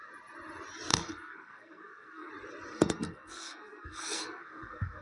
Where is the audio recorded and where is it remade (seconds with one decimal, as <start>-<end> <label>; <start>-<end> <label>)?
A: 0.0-0.9 recorded; 0.9-2.3 remade; 2.3-2.7 recorded; 2.7-5.0 remade